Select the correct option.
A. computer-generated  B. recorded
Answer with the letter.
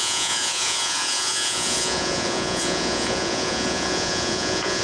A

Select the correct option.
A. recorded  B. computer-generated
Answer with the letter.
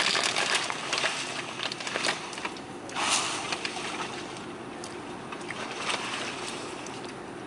A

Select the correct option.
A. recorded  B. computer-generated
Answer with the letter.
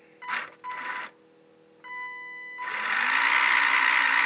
A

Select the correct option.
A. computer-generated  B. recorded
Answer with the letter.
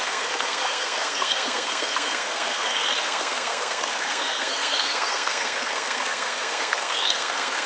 A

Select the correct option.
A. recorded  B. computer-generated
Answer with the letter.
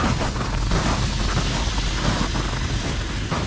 A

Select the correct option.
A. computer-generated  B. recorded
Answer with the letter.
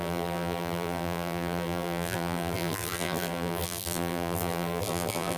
A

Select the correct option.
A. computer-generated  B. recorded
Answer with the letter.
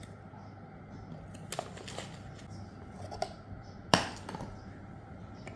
B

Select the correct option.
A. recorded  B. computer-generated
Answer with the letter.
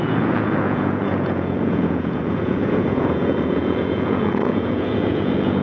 B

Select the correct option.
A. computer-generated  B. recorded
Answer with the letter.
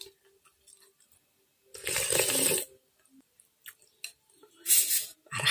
B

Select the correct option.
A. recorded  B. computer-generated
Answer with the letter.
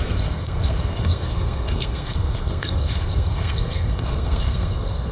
B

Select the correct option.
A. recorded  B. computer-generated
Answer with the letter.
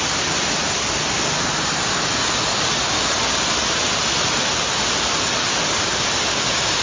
A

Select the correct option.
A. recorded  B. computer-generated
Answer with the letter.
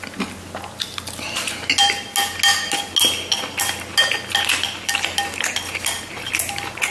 A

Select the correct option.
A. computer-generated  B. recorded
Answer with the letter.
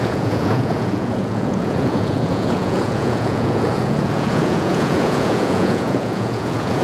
A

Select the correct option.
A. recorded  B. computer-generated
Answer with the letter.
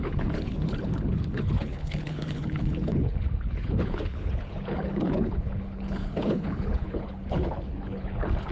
B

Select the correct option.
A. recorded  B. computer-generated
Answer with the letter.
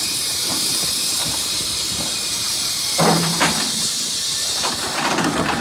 B